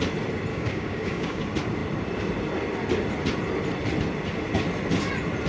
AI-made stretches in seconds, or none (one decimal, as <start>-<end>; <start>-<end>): 0.5-1.4